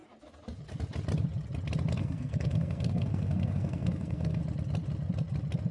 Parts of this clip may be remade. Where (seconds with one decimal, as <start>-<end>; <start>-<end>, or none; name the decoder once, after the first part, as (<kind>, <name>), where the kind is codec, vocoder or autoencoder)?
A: 2.0-4.4 (codec, SNAC)